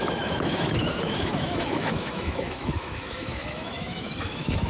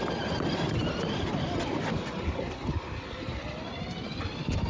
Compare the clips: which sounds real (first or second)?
second